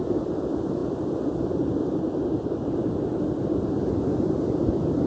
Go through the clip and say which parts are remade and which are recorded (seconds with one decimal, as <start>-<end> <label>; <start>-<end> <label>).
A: 0.0-5.1 recorded